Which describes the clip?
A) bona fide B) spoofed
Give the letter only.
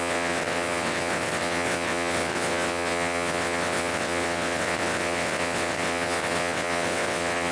B